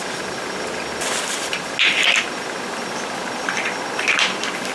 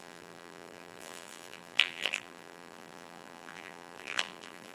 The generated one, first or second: second